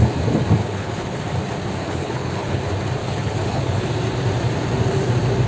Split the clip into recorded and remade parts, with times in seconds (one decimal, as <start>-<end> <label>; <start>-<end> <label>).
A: 0.0-0.6 recorded; 0.6-1.2 remade; 1.2-1.8 recorded; 1.8-2.6 remade; 2.6-3.0 recorded; 3.0-3.9 remade; 3.9-5.5 recorded